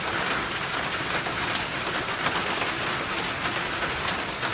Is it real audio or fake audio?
real